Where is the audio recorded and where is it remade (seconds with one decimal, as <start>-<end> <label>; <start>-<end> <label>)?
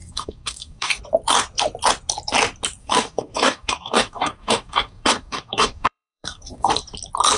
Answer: 0.0-1.0 remade; 1.0-2.8 recorded; 2.8-6.7 remade; 6.7-7.4 recorded